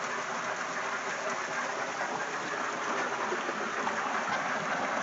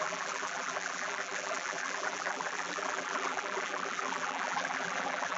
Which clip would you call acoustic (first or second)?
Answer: first